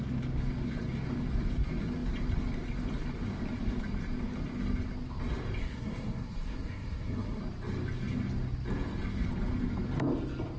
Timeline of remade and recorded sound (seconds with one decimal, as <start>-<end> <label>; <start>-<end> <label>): 0.0-5.6 recorded; 5.6-7.4 remade; 7.4-10.6 recorded